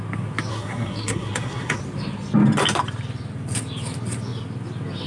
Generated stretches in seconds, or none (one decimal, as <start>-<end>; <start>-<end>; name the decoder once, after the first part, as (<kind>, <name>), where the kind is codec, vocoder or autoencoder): 0.5-1.8 (codec, SNAC)